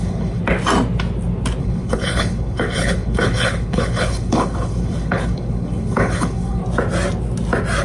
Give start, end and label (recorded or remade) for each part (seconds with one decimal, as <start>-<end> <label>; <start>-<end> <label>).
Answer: 0.0-0.4 remade; 0.4-1.6 recorded; 1.6-6.6 remade; 6.6-7.8 recorded